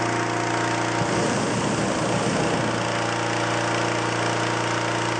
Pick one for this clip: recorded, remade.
recorded